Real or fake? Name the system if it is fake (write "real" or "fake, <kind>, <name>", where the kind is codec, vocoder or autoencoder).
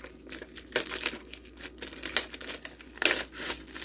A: real